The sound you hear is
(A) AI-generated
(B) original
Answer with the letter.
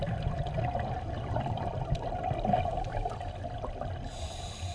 B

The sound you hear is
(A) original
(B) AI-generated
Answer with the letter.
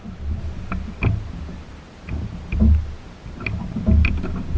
A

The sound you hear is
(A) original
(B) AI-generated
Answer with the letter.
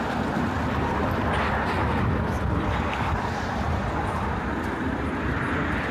B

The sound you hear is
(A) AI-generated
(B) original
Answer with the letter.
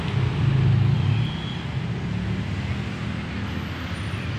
B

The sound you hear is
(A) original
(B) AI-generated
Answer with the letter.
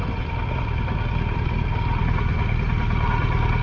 B